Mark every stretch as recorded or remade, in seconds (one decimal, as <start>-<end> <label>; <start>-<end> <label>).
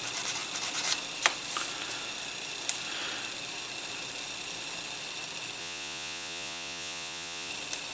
0.0-5.6 recorded; 5.6-7.5 remade; 7.5-7.9 recorded